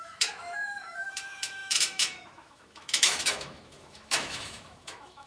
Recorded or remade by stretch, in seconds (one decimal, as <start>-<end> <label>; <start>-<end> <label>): 0.0-5.3 remade